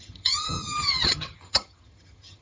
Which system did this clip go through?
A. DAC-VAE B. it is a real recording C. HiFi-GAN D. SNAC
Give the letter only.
C